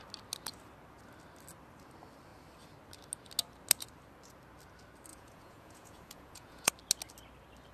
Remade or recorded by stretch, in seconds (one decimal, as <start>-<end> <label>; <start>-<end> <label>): 0.0-5.1 recorded; 5.1-6.7 remade; 6.7-7.7 recorded